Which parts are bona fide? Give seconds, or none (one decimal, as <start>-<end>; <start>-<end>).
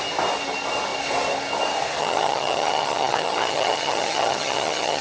0.0-2.0